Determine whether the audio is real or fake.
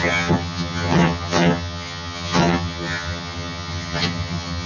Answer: fake